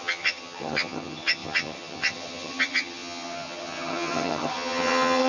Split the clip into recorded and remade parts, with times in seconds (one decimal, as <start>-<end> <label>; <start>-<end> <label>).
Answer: 0.0-5.3 remade